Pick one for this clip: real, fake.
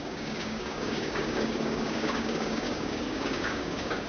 fake